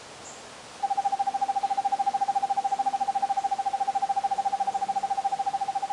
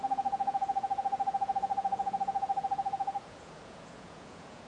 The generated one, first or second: second